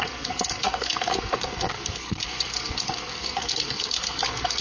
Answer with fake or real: fake